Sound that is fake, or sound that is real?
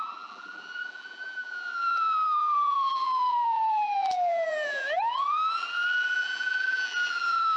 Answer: fake